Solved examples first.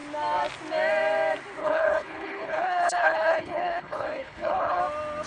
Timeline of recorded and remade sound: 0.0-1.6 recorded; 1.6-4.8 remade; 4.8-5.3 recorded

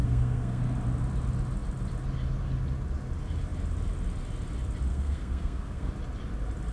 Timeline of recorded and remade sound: 0.0-0.6 remade; 0.6-4.9 recorded; 4.9-5.9 remade; 5.9-6.7 recorded